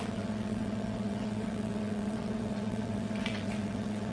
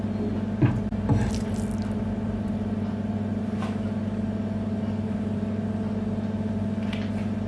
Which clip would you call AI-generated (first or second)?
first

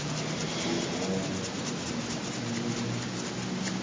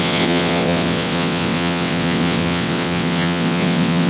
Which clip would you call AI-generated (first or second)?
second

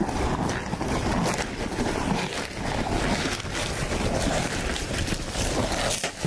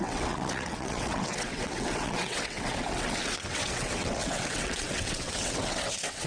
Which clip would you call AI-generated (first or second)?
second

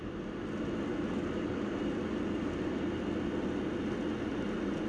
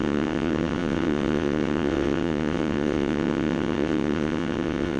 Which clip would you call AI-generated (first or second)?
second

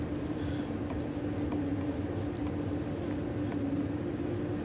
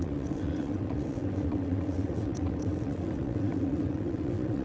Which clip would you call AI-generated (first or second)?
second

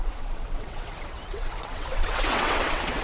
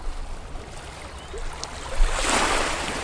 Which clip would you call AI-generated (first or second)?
first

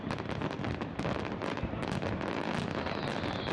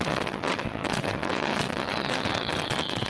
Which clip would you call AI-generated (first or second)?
second